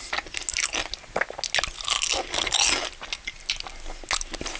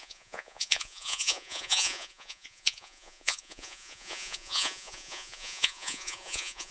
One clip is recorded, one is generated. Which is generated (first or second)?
second